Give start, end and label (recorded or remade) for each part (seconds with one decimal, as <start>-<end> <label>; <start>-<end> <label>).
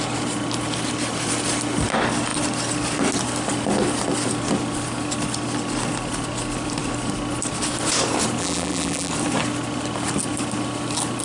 0.0-8.4 recorded; 8.4-9.1 remade; 9.1-11.2 recorded